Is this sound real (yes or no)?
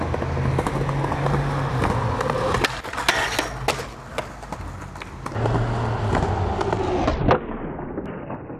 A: yes